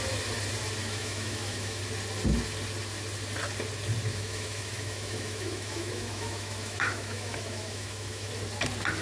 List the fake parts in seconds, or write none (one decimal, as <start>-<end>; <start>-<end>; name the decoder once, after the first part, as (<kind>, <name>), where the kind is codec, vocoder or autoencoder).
0.8-1.8 (autoencoder, DAC-VAE); 4.1-8.3